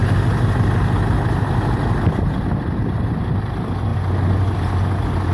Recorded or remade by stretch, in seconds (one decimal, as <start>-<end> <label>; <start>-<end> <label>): 0.0-3.2 remade; 3.2-5.3 recorded